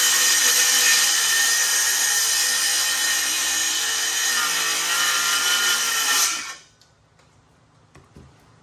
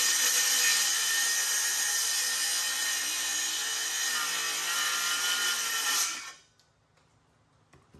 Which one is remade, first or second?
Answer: first